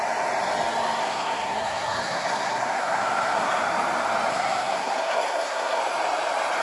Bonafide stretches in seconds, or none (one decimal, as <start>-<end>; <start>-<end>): 0.0-1.0; 3.6-4.3; 5.8-6.6